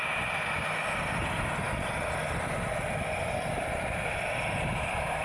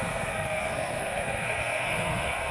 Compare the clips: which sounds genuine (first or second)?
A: first